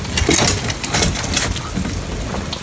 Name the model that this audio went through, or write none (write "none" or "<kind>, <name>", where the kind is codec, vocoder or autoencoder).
none